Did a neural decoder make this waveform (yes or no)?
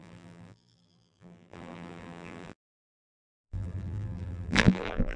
yes